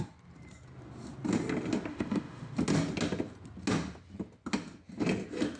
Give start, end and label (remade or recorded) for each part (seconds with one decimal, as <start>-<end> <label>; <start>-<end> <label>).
0.0-1.9 recorded; 1.9-2.5 remade; 2.5-5.6 recorded